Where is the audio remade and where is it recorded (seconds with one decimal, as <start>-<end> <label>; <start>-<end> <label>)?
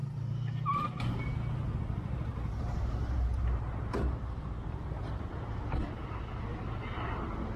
0.0-1.3 remade; 1.3-2.3 recorded; 2.3-6.2 remade; 6.2-7.6 recorded